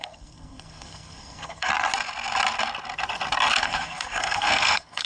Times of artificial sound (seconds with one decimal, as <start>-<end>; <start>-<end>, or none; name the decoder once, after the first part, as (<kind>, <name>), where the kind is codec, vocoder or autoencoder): 0.0-1.7 (codec, SNAC); 3.6-5.1